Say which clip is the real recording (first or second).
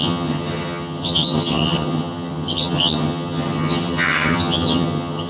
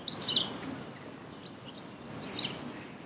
second